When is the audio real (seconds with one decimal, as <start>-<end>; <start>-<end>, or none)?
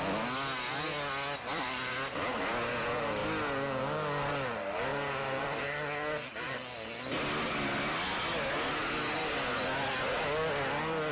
0.0-1.5; 2.7-4.9; 7.1-11.1